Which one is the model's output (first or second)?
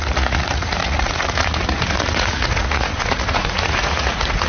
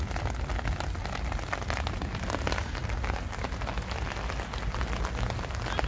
first